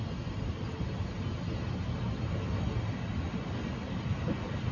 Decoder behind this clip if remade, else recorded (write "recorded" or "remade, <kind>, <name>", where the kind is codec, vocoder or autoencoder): recorded